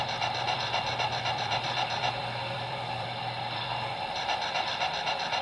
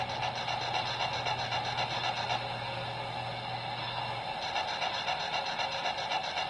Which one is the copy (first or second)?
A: first